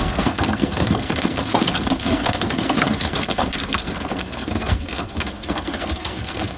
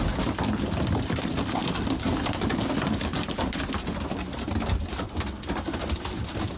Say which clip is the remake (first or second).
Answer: first